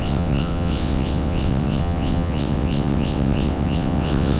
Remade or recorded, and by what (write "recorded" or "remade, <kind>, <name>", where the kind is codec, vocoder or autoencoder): remade, vocoder, WaveNeXt